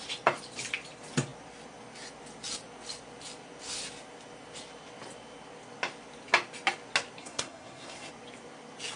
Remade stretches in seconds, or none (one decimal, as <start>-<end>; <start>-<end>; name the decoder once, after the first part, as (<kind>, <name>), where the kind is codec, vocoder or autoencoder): 7.2-8.1 (codec, SNAC)